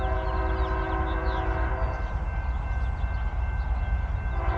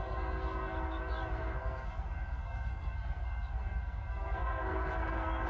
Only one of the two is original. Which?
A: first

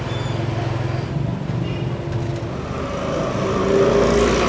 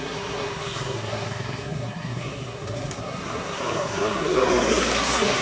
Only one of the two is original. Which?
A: first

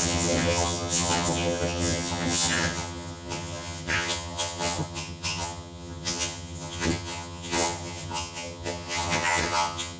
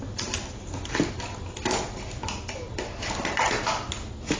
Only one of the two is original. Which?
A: second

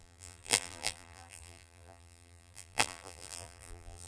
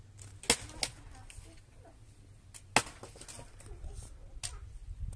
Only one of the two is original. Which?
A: second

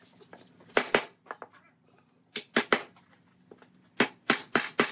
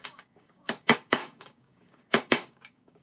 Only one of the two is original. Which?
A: first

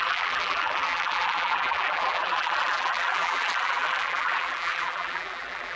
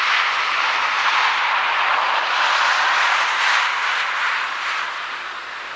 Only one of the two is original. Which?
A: second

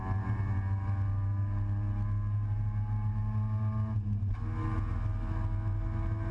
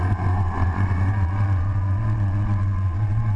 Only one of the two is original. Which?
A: first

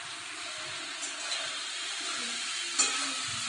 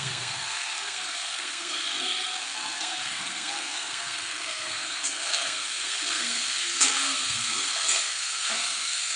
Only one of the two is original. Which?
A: first